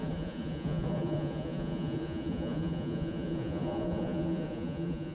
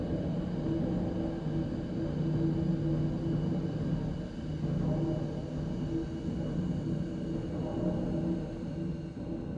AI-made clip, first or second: first